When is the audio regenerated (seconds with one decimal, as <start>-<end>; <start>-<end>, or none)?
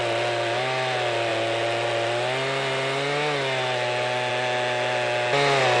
none